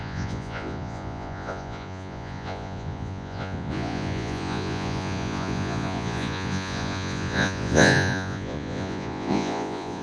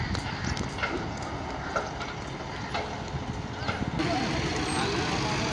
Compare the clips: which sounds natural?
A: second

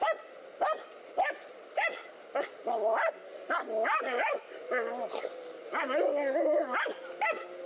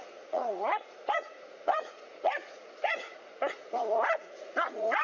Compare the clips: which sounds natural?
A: first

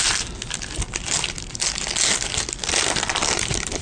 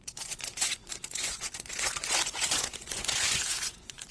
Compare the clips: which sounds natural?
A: first